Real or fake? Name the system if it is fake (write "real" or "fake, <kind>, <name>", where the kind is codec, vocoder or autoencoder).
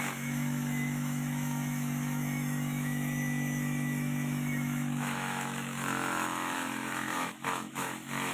fake, autoencoder, DAC-VAE